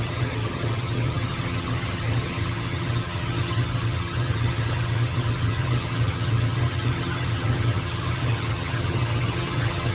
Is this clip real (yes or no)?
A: no